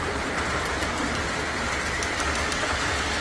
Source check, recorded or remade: recorded